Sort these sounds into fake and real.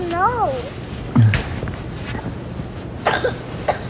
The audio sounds real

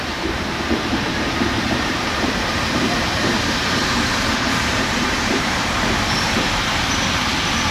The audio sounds fake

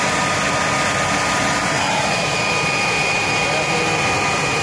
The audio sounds real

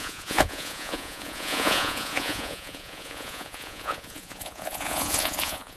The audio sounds fake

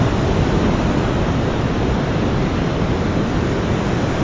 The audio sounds real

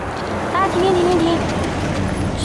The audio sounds real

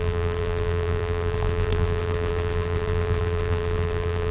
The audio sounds fake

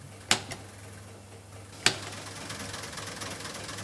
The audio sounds real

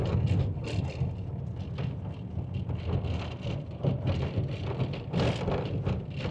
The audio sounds real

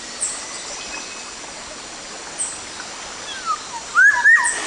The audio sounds real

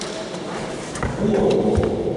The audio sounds real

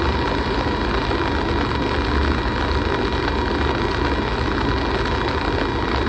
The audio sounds real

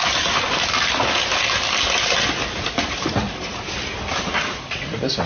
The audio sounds real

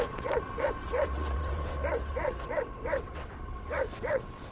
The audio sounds fake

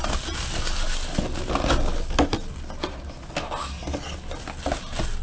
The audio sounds real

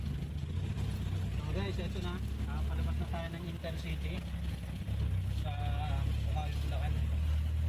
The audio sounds real